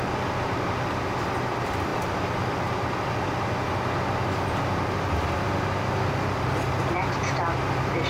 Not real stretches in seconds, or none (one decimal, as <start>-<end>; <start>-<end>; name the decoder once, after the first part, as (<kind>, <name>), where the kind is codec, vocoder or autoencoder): none